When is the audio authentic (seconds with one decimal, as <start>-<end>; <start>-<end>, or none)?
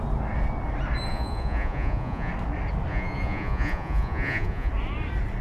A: 0.0-1.1; 2.3-2.9; 4.7-5.4